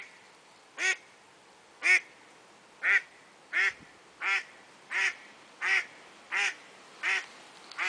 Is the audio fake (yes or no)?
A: no